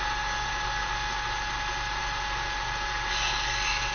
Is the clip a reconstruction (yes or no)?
no